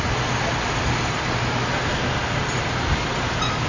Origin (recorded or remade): recorded